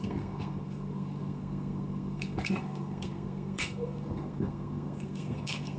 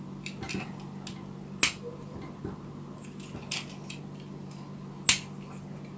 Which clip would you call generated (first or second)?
first